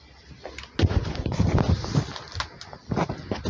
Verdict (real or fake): real